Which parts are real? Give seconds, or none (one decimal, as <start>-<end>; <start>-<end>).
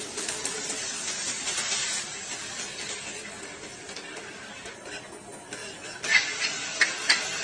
0.0-1.8; 2.4-4.1; 4.8-7.4